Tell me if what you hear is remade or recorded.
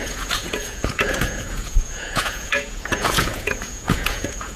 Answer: remade